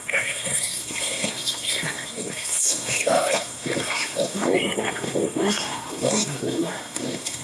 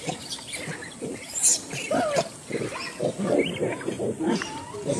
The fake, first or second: first